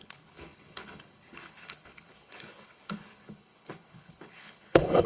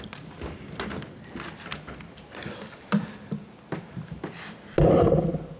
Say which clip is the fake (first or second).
first